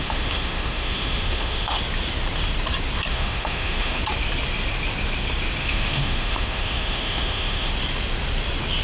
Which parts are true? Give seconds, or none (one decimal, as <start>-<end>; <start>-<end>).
1.8-3.1; 4.0-5.6; 7.7-8.8